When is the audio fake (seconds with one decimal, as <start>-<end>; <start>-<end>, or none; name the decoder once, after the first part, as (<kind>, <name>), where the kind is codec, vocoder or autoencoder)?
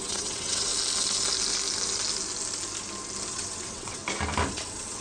0.0-0.7 (vocoder, WaveNeXt); 3.3-4.0; 4.5-5.0